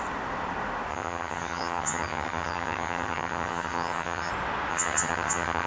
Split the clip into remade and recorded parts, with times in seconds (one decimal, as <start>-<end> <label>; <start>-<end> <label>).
0.0-0.9 recorded; 0.9-4.3 remade; 4.3-4.7 recorded; 4.7-5.7 remade